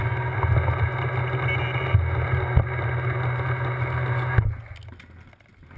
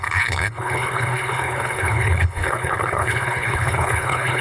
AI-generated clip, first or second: second